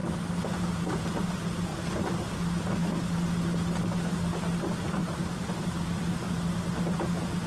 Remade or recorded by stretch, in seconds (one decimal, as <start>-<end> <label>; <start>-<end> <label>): 0.0-1.0 remade; 1.0-1.7 recorded; 1.7-2.4 remade; 2.4-5.0 recorded; 5.0-5.7 remade; 5.7-7.5 recorded

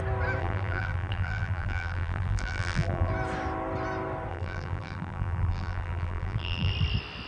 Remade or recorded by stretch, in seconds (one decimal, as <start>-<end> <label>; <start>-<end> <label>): 0.0-0.4 recorded; 0.4-3.1 remade; 3.1-4.3 recorded; 4.3-6.7 remade; 6.7-7.3 recorded

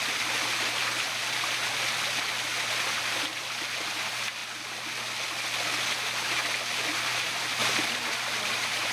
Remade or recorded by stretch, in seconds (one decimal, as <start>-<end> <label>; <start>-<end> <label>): 0.0-7.6 recorded; 7.6-8.9 remade

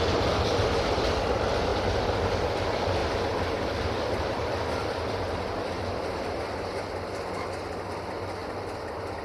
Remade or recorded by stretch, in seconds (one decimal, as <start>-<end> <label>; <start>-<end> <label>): 0.0-1.7 recorded; 1.7-2.2 remade; 2.2-3.0 recorded; 3.0-6.4 remade; 6.4-9.2 recorded

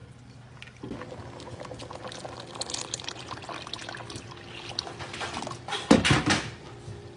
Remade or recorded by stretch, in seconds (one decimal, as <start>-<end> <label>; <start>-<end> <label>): 0.0-2.7 recorded; 2.7-3.8 remade; 3.8-7.2 recorded

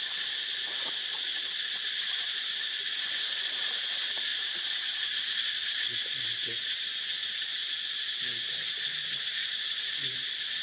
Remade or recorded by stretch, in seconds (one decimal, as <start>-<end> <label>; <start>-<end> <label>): 0.0-4.3 recorded; 4.3-5.2 remade; 5.2-7.5 recorded; 7.5-8.0 remade; 8.0-9.4 recorded; 9.4-10.6 remade